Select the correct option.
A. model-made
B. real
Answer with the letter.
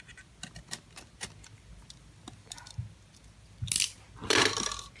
B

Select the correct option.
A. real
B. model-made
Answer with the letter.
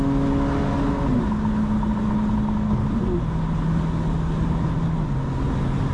A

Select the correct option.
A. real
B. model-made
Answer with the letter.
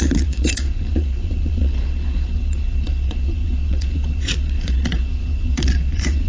B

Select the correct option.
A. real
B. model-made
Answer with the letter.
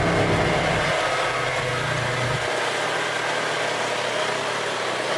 A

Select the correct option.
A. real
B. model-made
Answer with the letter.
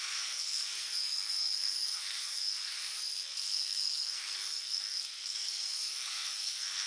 B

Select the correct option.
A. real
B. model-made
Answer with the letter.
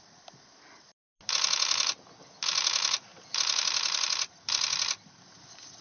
A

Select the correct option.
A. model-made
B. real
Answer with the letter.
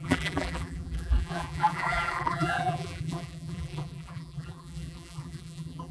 A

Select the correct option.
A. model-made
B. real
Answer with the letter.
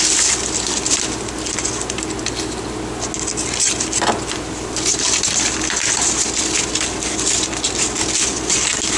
B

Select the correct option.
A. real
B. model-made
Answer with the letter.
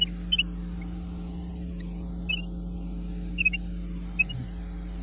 A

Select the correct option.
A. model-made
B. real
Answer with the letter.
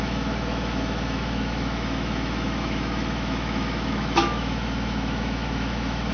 A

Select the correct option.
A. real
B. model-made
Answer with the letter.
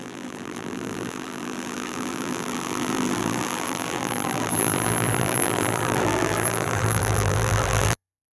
B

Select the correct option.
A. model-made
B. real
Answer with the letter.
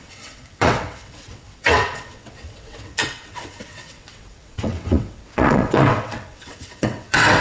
A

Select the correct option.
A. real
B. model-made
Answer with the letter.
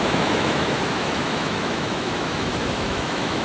B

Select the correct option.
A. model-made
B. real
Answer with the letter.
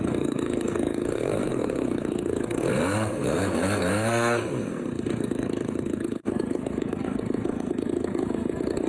A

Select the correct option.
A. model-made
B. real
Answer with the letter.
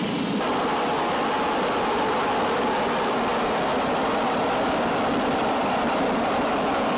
B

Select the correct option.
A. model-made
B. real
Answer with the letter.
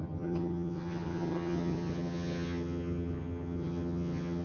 A